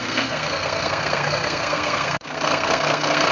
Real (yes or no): no